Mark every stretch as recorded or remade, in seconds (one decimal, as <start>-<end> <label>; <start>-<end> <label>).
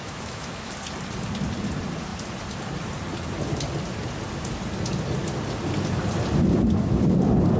0.0-0.7 remade; 0.7-7.6 recorded